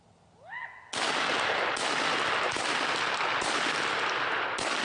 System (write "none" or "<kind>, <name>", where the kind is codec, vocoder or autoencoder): none